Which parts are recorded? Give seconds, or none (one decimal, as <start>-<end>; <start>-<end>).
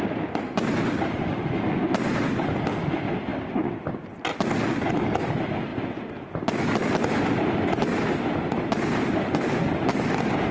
0.0-10.5